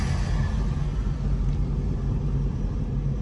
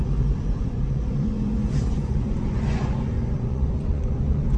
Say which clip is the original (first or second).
first